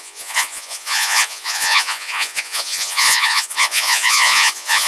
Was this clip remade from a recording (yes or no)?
yes